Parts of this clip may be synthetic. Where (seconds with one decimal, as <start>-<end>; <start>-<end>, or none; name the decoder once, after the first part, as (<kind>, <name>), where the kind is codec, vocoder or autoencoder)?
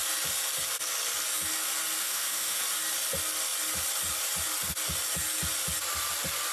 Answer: 2.0-2.6 (autoencoder, DAC-VAE)